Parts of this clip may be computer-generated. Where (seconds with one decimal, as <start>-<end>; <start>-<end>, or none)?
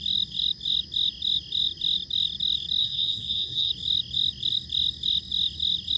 2.8-3.7